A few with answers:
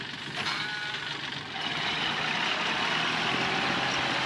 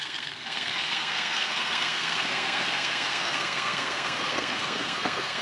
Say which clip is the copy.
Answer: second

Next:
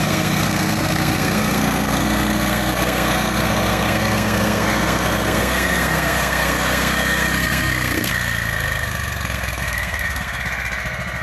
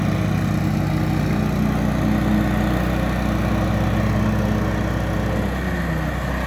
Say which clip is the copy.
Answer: first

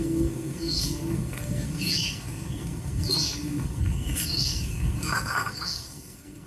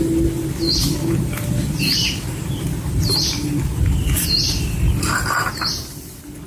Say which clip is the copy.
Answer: first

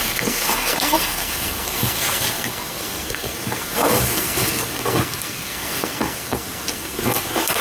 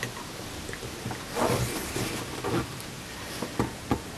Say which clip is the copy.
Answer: first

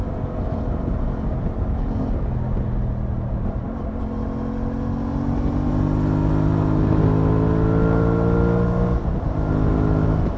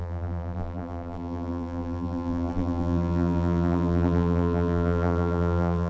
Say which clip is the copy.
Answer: second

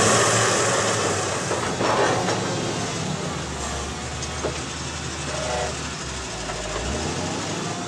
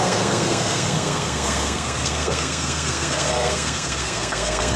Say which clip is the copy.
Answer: second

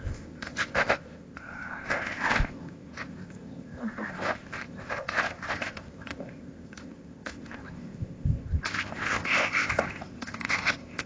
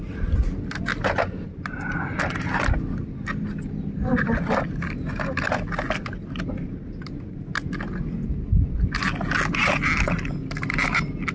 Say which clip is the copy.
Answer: first